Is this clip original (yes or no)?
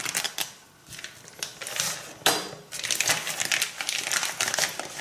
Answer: yes